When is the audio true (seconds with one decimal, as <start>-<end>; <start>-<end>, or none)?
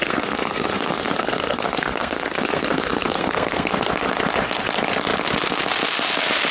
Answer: 3.9-6.5